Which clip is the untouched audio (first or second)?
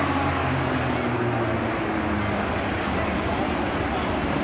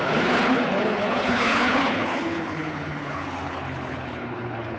first